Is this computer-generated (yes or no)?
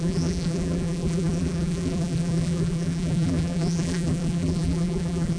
yes